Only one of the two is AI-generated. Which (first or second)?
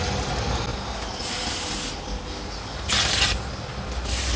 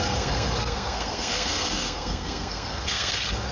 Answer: second